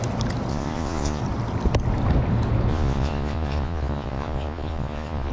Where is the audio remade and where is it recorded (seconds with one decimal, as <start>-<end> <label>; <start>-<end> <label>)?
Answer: 0.0-0.5 recorded; 0.5-1.2 remade; 1.2-2.7 recorded; 2.7-5.3 remade